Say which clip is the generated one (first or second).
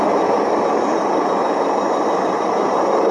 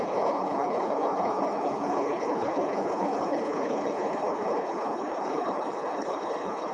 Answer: second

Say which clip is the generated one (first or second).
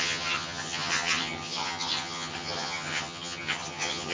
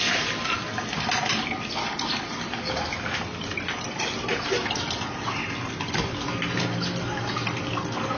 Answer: first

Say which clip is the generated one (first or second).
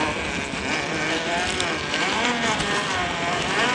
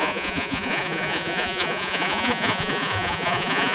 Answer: second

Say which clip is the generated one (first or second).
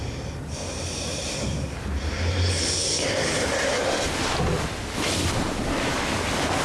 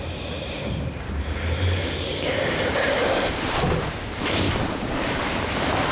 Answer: second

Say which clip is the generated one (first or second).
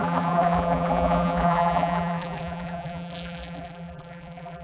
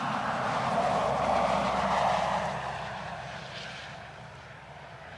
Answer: first